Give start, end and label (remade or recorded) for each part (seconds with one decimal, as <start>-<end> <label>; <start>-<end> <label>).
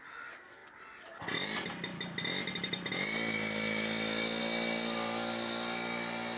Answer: 0.0-6.4 recorded